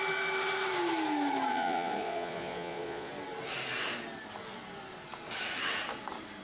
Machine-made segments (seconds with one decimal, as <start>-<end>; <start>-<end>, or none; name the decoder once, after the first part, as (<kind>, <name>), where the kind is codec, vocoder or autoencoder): 1.5-3.1 (vocoder, Vocos)